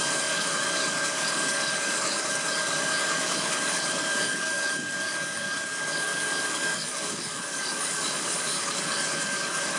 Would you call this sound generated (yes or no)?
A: yes